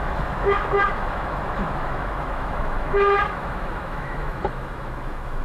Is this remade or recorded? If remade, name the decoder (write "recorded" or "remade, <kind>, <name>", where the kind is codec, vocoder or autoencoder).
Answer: remade, autoencoder, DAC-VAE